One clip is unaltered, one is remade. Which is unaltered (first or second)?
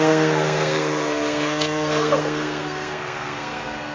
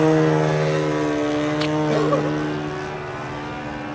second